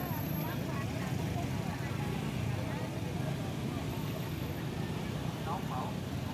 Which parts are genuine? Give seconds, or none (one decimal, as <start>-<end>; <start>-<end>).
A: 0.0-3.9; 4.6-6.3